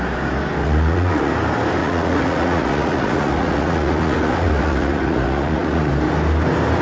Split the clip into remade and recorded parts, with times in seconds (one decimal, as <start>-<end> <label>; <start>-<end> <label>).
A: 0.0-0.6 recorded; 0.6-1.3 remade; 1.3-1.8 recorded; 1.8-5.9 remade; 5.9-6.8 recorded